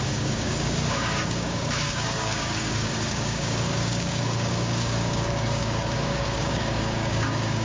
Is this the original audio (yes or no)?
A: no